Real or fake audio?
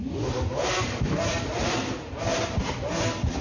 real